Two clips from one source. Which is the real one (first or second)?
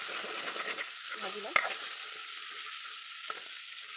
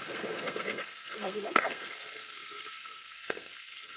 first